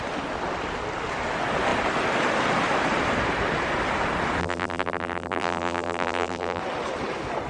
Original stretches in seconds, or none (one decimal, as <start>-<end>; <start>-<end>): 0.0-4.4; 6.6-7.5